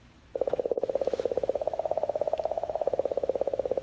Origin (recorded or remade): remade